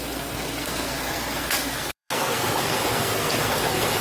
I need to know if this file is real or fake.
fake